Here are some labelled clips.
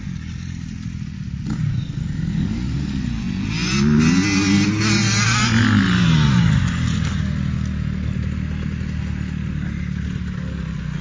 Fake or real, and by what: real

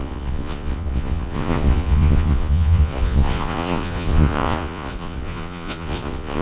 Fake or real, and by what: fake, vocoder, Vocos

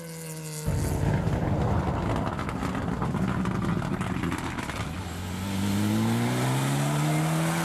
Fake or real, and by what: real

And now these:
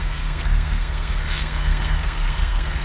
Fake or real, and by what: fake, codec, SNAC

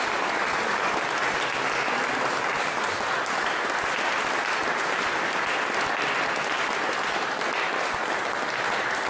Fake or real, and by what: real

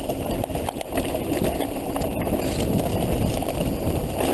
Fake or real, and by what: real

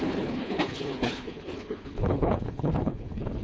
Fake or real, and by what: fake, codec, HILCodec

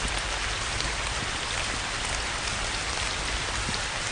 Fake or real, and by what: real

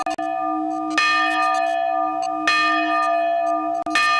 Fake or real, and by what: real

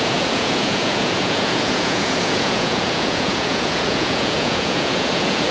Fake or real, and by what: fake, vocoder, Vocos